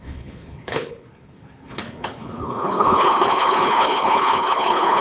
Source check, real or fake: fake